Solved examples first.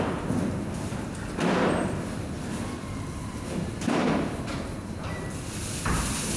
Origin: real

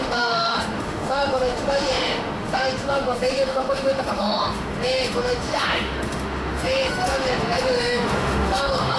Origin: fake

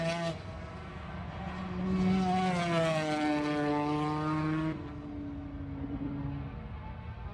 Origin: real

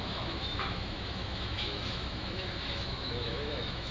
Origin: fake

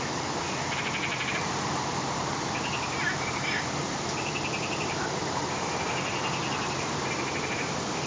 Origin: real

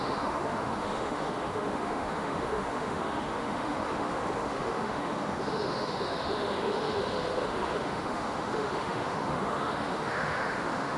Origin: fake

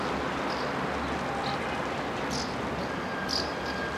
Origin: real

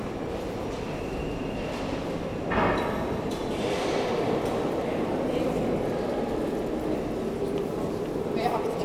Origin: real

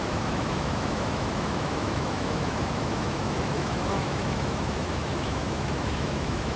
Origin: fake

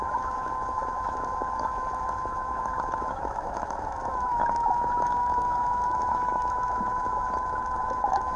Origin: fake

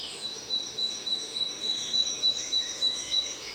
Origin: fake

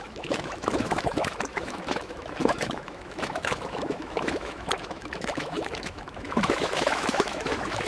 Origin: fake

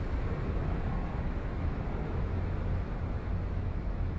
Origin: fake